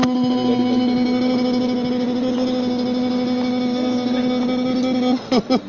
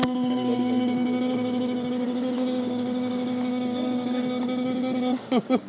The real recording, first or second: first